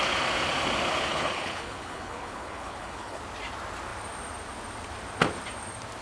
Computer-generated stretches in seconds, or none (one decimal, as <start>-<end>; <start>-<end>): 1.1-3.2